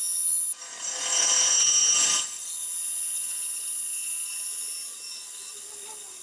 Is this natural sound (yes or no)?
yes